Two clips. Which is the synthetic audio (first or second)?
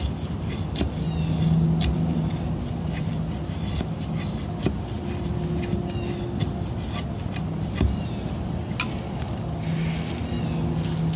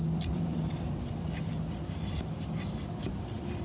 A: second